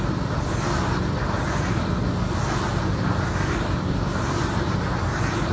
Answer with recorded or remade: recorded